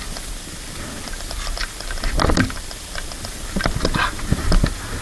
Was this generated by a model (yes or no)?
no